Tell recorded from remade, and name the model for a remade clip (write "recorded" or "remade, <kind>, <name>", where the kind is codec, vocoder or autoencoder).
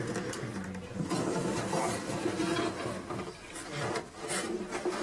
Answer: recorded